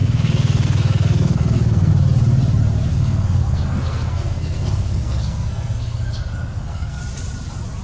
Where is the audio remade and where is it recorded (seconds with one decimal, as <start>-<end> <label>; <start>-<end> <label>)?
0.0-1.9 remade; 1.9-2.9 recorded; 2.9-7.0 remade; 7.0-7.8 recorded